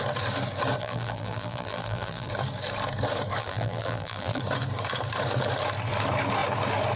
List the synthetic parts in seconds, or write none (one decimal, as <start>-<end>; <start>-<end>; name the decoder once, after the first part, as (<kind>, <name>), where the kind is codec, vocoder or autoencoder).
0.8-2.3 (vocoder, BigVGAN v2); 3.4-4.4